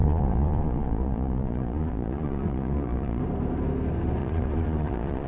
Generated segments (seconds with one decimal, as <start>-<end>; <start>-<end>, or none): 0.0-3.2; 4.2-5.3